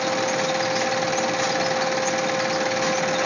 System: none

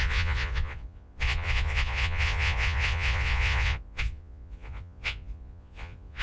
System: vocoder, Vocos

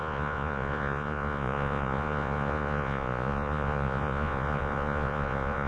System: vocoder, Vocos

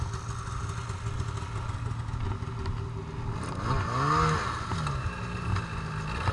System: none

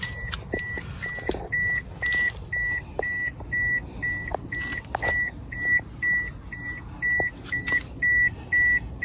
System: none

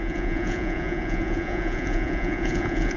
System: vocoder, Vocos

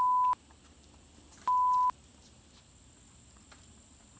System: none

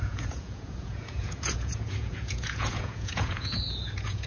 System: vocoder, Vocos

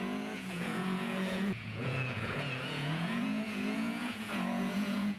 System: vocoder, Vocos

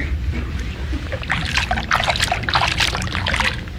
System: none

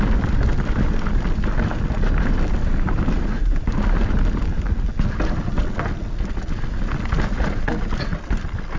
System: none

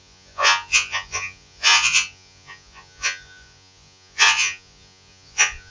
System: vocoder, Vocos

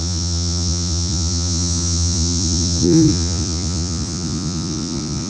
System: vocoder, Vocos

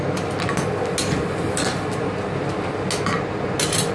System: none